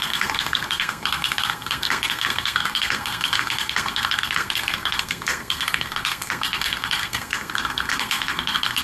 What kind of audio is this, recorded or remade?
remade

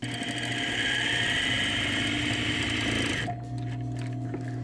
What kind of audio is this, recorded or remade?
recorded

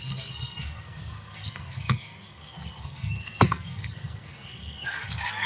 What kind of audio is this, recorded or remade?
remade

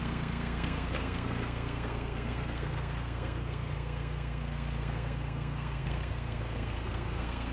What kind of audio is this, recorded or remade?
remade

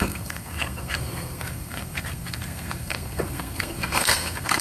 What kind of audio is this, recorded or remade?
remade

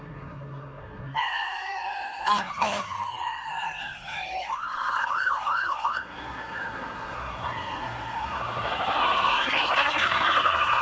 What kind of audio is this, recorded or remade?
remade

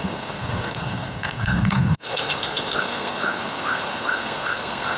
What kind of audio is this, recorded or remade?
remade